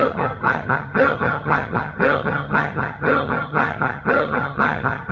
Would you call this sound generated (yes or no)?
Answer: yes